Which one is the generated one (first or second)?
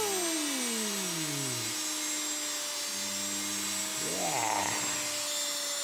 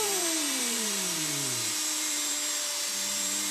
second